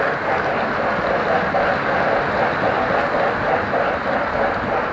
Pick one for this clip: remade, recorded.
recorded